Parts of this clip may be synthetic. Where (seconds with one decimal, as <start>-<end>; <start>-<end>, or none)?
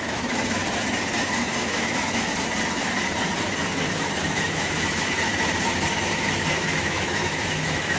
0.0-0.6; 1.2-2.3; 3.8-5.3; 6.0-8.0